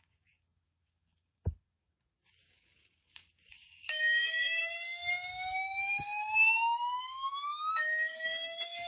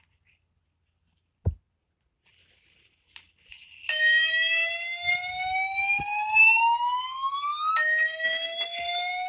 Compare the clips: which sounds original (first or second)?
second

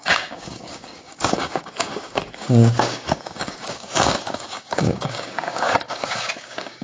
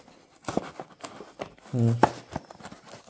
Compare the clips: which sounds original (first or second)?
second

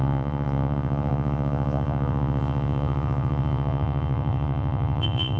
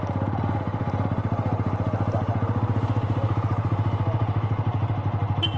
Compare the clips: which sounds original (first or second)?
second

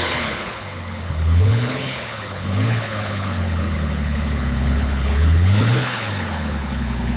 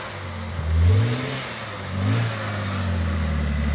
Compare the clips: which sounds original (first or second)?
second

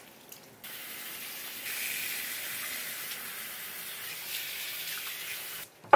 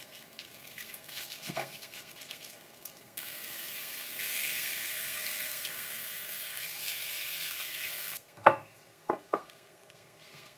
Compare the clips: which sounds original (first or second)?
first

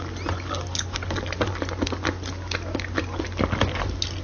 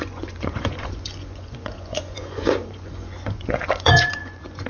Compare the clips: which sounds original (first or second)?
first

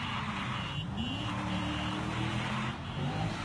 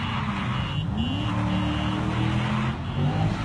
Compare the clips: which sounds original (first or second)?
second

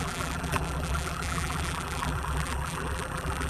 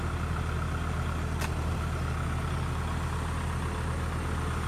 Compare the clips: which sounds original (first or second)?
second